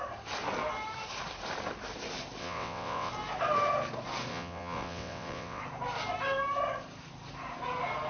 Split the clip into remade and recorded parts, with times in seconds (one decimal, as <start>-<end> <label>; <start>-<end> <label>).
0.0-2.4 recorded; 2.4-3.1 remade; 3.1-4.3 recorded; 4.3-5.6 remade; 5.6-8.1 recorded